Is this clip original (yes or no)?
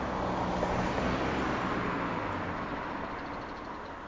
yes